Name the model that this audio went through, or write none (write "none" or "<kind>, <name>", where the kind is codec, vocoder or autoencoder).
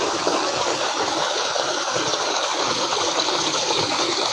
codec, DAC